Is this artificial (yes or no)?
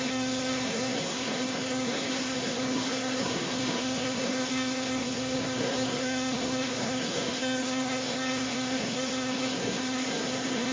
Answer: yes